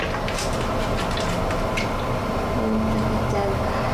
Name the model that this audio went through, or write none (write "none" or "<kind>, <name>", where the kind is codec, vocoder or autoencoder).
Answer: none